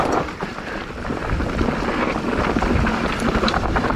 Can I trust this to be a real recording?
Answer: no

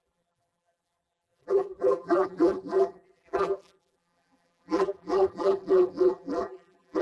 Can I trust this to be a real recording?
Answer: no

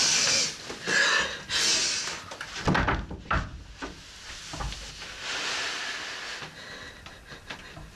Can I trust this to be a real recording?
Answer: yes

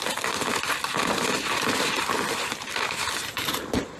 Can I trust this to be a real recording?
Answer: no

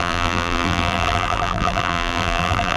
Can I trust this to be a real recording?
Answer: no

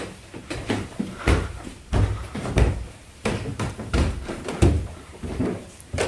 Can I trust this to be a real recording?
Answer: no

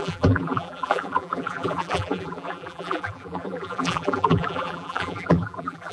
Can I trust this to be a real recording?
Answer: no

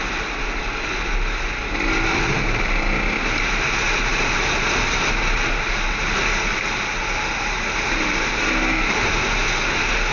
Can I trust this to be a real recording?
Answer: yes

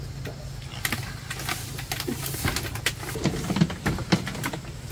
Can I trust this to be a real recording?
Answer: yes